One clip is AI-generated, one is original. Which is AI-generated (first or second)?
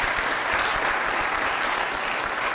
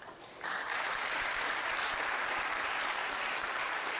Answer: second